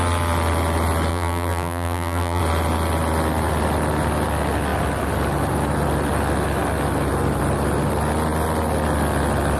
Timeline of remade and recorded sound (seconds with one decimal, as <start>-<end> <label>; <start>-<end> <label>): 0.0-1.1 recorded; 1.1-2.4 remade; 2.4-9.6 recorded